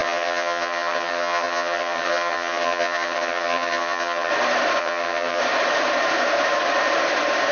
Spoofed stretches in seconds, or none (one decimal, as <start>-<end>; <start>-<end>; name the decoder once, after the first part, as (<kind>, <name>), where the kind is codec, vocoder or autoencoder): 0.0-4.3 (vocoder, HiFi-GAN); 4.8-5.4